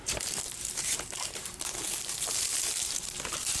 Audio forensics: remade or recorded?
remade